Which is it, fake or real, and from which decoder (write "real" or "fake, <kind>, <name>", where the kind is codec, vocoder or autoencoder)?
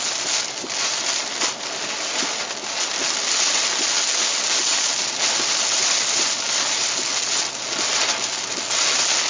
real